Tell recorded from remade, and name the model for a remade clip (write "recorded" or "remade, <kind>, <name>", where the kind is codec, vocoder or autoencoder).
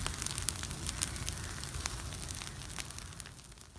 recorded